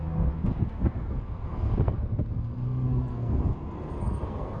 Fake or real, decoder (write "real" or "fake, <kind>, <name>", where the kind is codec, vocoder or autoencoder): fake, codec, SNAC